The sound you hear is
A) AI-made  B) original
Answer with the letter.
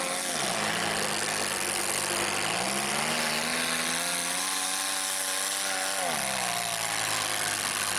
B